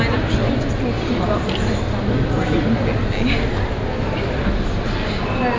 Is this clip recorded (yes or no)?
yes